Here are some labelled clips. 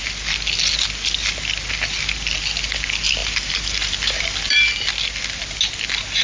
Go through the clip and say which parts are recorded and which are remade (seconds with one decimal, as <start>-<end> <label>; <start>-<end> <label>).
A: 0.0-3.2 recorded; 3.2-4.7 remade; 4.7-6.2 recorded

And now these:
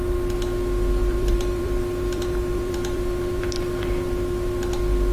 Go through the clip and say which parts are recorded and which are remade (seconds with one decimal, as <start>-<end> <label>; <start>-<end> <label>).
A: 0.0-1.0 recorded; 1.0-3.6 remade; 3.6-5.1 recorded

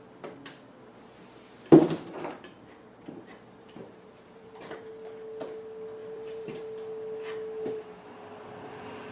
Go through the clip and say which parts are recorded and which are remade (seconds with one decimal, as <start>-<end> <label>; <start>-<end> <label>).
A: 0.0-0.9 recorded; 0.9-4.9 remade; 4.9-6.0 recorded; 6.0-6.6 remade; 6.6-9.1 recorded

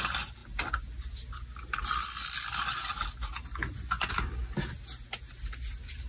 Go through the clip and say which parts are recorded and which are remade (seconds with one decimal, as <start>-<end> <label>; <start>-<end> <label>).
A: 0.0-6.1 recorded